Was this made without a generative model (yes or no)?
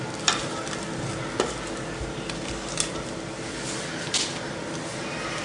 yes